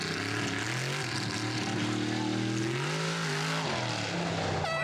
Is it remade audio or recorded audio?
recorded